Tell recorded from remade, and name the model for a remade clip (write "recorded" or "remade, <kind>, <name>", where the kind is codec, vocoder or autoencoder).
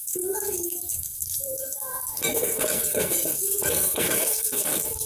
remade, codec, SNAC